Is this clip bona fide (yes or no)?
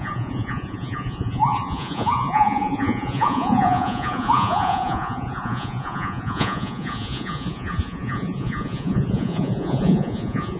no